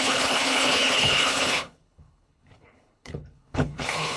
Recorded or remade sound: remade